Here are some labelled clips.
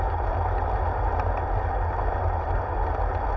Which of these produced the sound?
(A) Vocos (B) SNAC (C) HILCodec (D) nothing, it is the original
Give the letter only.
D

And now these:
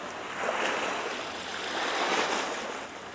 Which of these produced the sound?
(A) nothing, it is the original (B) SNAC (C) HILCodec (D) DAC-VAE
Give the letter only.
A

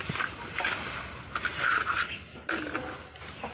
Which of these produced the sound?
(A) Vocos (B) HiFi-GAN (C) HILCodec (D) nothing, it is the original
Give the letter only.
D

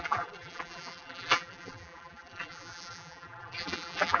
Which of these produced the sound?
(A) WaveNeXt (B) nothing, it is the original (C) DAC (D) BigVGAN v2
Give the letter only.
D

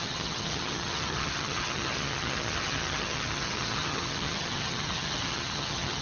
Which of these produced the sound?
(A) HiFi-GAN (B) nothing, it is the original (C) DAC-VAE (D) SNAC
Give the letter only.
A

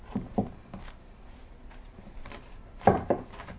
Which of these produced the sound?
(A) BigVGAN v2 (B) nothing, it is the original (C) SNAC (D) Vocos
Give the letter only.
A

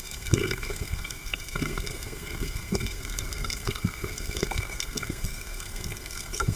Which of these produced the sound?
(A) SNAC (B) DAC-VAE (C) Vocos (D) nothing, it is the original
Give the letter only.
A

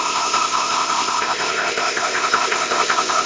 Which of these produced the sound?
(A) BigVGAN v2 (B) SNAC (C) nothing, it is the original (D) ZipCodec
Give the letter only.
D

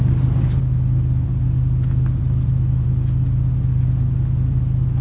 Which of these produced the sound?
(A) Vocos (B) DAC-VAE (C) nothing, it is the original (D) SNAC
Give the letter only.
C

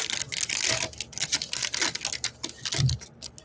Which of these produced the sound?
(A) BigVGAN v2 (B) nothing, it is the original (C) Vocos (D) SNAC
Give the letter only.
B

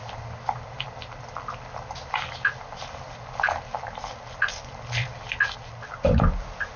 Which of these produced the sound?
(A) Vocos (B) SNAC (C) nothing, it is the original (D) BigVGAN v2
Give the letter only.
C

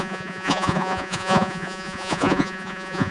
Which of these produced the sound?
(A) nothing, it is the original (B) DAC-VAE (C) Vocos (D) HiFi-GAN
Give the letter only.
C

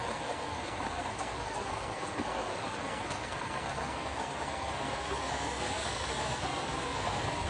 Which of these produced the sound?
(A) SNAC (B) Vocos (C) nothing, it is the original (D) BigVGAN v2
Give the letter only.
A